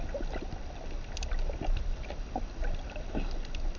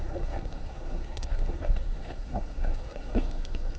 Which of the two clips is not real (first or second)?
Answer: second